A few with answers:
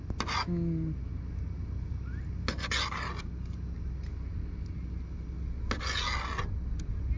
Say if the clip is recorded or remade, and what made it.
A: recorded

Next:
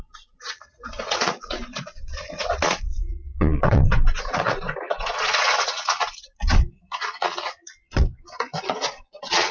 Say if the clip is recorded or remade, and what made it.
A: remade, vocoder, Vocos